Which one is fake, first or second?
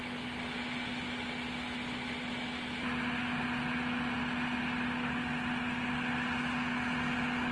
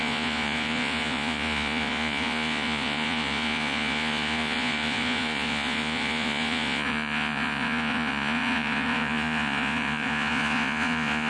second